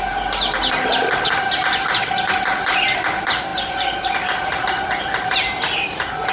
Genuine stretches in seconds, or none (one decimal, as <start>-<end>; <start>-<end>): 0.0-6.3